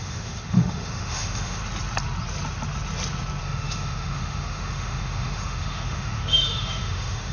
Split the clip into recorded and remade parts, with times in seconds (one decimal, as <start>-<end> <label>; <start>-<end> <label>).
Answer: 0.0-1.6 remade; 1.6-3.4 recorded; 3.4-7.3 remade